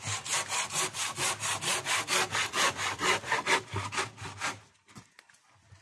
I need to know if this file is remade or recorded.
recorded